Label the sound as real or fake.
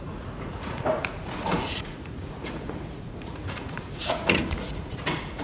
fake